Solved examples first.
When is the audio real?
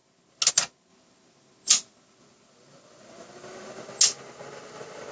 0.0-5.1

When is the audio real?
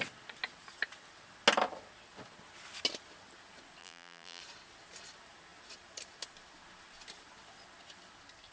0.0-3.8; 4.4-8.5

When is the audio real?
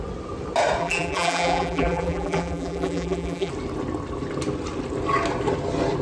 0.0-0.8; 3.5-6.0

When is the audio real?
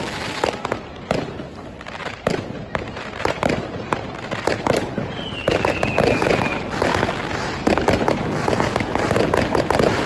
0.0-2.0; 5.4-10.1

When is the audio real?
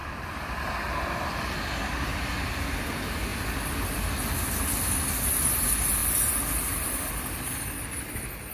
1.3-6.0; 7.1-8.5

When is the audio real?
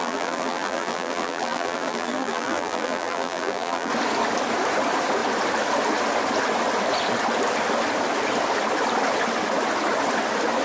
3.9-10.6